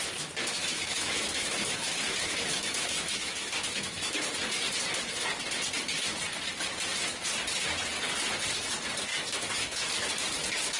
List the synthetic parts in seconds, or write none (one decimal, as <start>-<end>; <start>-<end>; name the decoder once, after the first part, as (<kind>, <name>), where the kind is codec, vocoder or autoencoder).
0.6-4.3 (autoencoder, DAC-VAE); 9.1-9.9